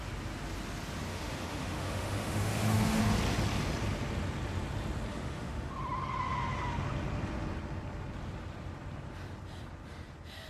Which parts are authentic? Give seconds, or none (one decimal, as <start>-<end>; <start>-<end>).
0.0-1.1; 3.0-5.1; 5.7-10.5